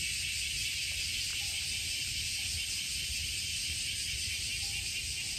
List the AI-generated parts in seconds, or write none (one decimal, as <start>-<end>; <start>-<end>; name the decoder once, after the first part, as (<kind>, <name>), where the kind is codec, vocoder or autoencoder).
1.3-2.1 (vocoder, BigVGAN v2); 3.2-4.5